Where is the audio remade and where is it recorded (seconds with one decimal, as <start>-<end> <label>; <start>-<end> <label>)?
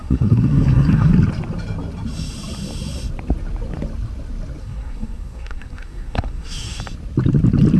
0.0-1.1 remade; 1.1-4.6 recorded; 4.6-6.8 remade; 6.8-7.8 recorded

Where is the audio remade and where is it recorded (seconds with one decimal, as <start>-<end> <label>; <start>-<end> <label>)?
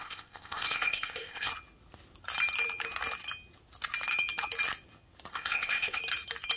0.0-1.5 remade; 1.5-5.3 recorded; 5.3-6.0 remade; 6.0-6.6 recorded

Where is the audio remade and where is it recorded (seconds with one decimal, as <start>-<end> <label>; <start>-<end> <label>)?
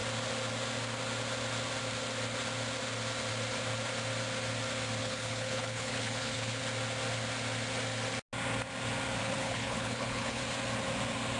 0.0-5.0 recorded; 5.0-6.6 remade; 6.6-9.2 recorded; 9.2-10.4 remade; 10.4-11.4 recorded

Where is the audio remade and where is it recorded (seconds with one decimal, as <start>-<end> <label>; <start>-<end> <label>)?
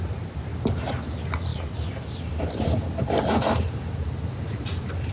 0.0-5.1 recorded